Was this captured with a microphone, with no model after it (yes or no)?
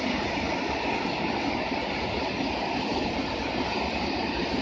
yes